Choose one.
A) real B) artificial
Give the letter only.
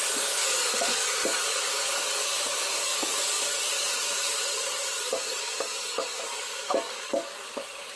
B